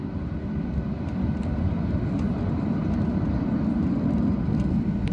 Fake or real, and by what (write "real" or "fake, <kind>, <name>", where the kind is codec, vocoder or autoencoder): real